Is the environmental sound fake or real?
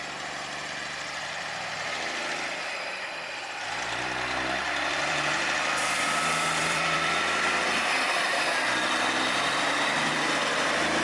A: fake